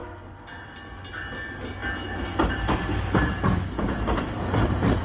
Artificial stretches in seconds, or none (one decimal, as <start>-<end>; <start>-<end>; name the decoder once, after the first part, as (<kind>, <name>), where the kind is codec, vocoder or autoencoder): none